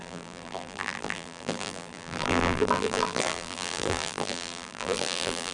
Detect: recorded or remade remade